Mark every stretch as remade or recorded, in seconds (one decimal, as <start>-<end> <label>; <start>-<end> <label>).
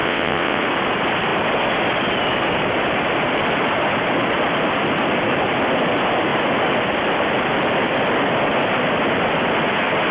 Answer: 0.0-0.6 remade; 0.6-10.1 recorded